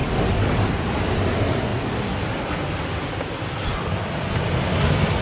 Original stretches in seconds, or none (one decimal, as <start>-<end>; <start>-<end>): 0.6-5.2